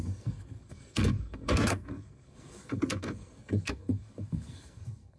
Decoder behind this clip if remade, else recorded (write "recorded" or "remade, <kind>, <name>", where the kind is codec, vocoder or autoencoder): remade, codec, SNAC